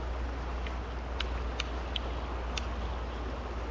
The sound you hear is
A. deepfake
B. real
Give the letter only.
B